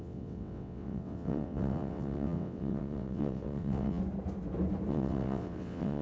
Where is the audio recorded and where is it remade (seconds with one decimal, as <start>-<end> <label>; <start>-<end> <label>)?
0.0-4.0 remade; 4.0-4.9 recorded; 4.9-6.0 remade